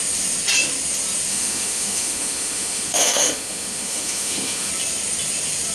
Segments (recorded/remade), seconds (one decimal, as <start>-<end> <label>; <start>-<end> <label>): 0.0-1.3 recorded; 1.3-4.7 remade; 4.7-5.7 recorded